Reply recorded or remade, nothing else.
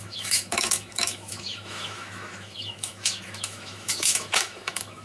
remade